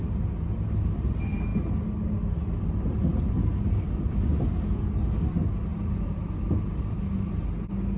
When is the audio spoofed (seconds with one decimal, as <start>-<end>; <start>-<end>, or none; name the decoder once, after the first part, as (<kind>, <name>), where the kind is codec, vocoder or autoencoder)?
5.7-7.0 (vocoder, BigVGAN v2)